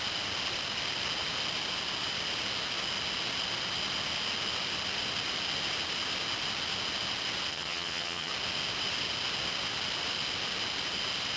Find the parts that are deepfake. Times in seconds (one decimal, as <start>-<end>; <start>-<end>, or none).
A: 7.5-8.3